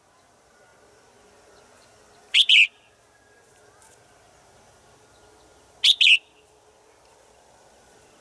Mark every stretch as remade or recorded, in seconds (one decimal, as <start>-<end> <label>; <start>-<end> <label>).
0.0-8.2 recorded